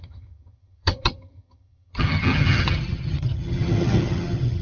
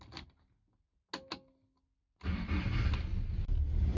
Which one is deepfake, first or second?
first